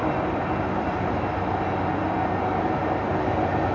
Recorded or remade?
recorded